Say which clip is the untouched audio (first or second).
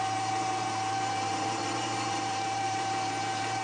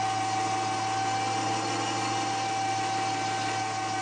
second